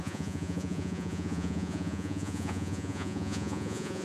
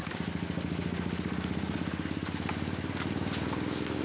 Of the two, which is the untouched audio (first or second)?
second